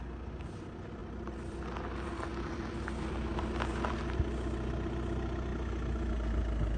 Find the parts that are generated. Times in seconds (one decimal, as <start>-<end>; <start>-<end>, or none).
1.0-3.9

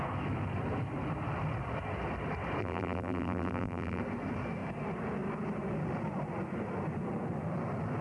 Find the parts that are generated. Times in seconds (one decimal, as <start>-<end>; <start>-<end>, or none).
2.6-4.0

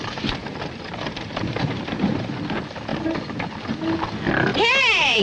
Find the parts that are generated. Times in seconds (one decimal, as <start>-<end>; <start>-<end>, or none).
0.4-2.3; 4.5-5.2

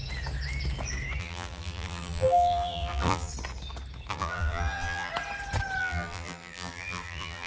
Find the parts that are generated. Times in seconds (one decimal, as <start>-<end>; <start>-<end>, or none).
1.2-3.3; 4.1-5.1; 5.8-7.5

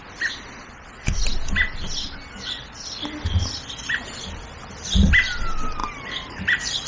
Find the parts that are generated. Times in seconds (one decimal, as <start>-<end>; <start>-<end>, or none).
5.8-6.9

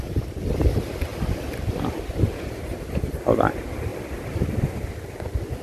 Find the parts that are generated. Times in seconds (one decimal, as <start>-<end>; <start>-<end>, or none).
1.1-2.6; 3.9-4.5

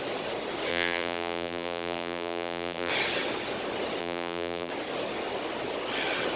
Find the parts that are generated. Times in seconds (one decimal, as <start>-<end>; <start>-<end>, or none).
0.7-2.9; 4.0-4.7

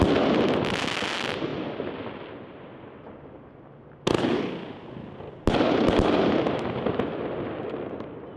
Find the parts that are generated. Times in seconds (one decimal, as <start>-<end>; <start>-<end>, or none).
none